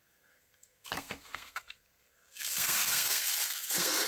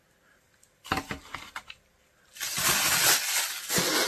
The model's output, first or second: first